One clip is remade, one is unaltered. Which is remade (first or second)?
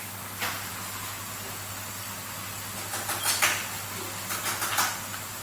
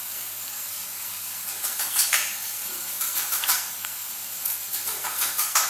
second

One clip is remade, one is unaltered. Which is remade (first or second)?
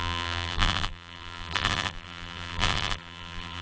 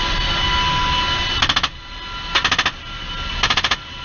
first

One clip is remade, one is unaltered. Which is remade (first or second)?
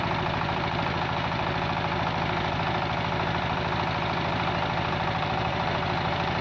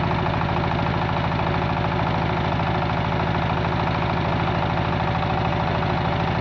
first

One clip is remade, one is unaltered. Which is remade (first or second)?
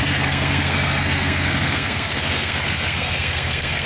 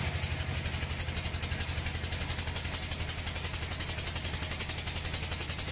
first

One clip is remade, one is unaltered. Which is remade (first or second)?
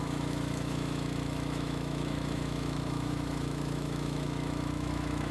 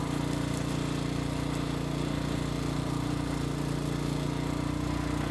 first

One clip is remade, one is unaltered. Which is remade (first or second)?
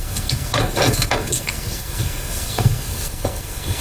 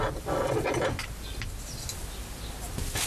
first